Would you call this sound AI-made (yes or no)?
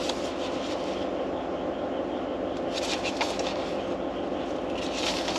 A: no